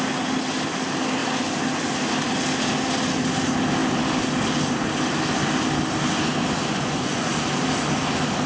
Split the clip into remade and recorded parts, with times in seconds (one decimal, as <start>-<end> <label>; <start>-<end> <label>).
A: 0.0-6.7 recorded; 6.7-7.3 remade; 7.3-8.5 recorded